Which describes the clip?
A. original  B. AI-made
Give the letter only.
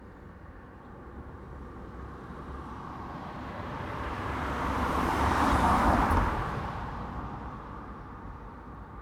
B